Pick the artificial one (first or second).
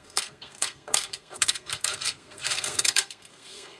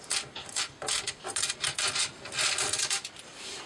first